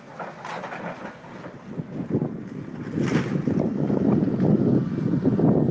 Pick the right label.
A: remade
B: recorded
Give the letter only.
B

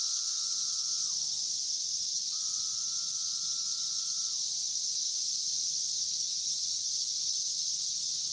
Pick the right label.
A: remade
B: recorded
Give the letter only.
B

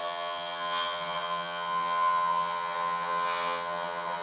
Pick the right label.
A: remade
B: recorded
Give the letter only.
A